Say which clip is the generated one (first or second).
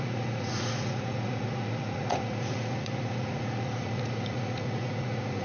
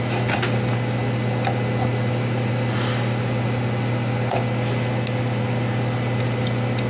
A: first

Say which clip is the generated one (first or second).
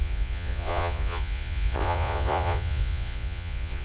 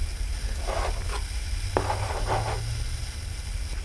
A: first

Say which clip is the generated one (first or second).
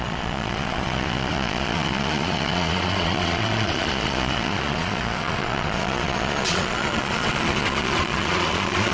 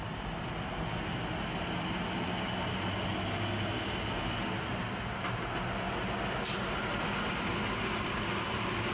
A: first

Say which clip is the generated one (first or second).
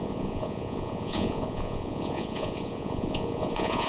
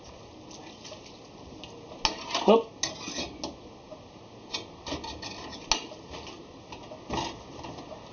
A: first